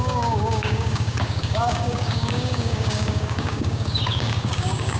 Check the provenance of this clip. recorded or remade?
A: remade